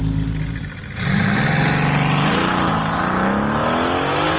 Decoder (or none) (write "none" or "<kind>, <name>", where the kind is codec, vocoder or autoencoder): none